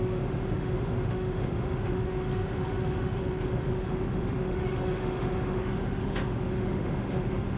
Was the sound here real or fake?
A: fake